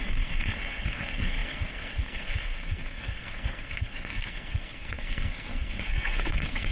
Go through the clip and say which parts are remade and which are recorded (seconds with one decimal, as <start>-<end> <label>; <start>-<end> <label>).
0.0-6.7 remade